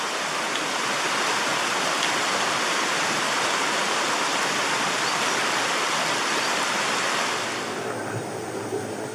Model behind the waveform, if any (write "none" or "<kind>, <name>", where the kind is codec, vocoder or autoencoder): none